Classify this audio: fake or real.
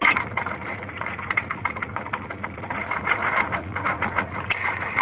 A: fake